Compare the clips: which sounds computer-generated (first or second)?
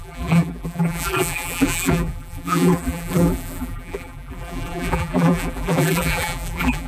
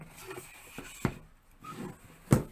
first